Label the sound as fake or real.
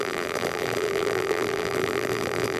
fake